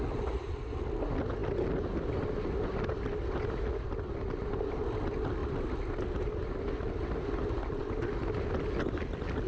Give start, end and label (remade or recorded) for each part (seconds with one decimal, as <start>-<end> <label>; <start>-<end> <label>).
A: 0.0-9.5 recorded